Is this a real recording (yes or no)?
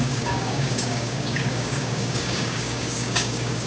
no